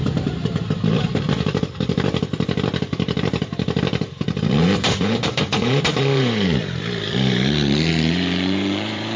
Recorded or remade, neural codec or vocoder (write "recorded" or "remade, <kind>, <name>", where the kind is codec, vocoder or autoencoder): remade, vocoder, BigVGAN v2